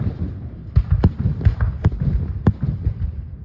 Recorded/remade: recorded